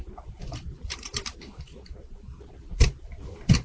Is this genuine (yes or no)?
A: no